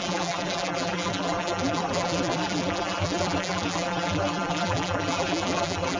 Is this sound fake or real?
fake